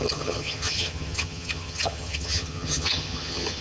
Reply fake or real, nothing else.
fake